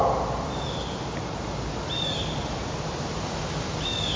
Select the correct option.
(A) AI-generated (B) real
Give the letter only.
B